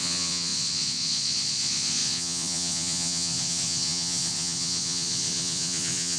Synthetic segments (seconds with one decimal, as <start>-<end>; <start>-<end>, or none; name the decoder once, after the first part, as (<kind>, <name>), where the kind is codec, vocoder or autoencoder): 0.0-6.2 (vocoder, Vocos)

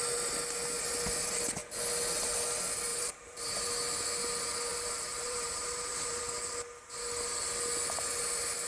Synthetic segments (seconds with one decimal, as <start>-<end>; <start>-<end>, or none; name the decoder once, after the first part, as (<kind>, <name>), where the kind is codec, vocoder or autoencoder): 2.9-3.5 (vocoder, BigVGAN v2); 4.7-6.2

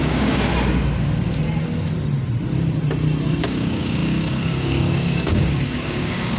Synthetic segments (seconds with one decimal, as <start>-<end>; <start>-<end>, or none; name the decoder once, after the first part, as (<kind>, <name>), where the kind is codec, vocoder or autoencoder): 0.0-0.5 (codec, DAC); 3.4-6.4

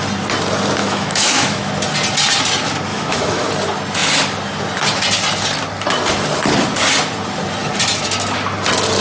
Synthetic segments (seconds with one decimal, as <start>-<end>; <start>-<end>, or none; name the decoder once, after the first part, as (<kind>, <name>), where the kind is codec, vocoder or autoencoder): 0.8-1.7 (autoencoder, DAC-VAE); 2.9-3.5